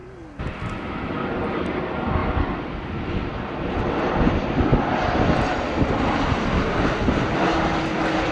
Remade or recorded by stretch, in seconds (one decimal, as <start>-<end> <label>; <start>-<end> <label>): 0.0-0.9 recorded; 0.9-2.2 remade; 2.2-3.0 recorded; 3.0-4.7 remade; 4.7-8.3 recorded